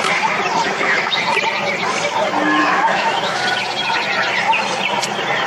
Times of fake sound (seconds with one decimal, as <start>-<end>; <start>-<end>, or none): 0.5-1.2; 2.6-3.4